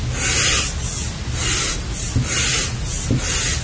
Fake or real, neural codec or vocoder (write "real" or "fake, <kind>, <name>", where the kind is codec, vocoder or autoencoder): real